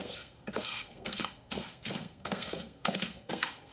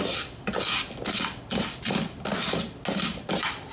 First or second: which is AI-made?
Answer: first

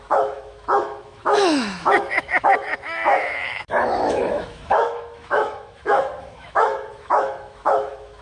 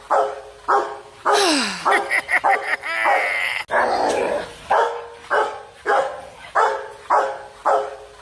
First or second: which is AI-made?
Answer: first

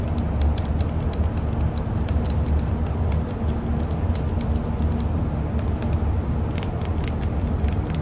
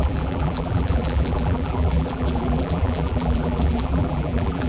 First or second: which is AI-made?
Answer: second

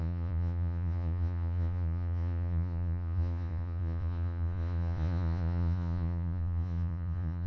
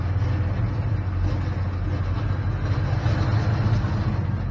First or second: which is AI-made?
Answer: first